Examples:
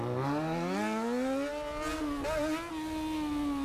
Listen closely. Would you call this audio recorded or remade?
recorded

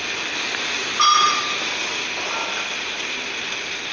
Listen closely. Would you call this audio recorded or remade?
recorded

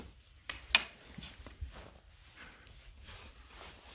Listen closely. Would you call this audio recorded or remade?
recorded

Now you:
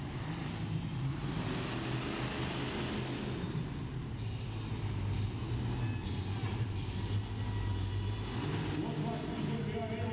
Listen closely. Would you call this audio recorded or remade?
recorded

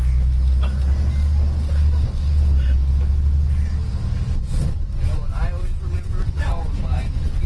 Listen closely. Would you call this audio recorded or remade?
recorded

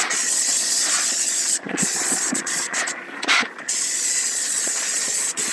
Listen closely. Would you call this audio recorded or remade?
remade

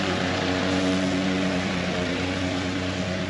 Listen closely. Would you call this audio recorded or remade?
remade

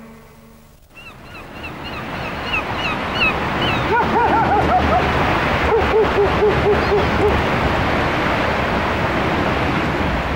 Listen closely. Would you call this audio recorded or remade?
recorded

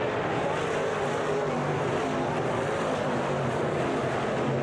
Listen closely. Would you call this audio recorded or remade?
recorded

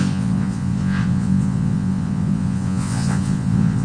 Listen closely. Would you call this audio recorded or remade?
remade